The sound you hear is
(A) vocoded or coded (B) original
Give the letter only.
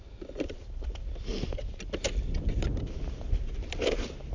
B